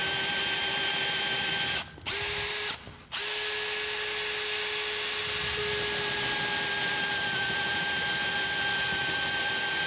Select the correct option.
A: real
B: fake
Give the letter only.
A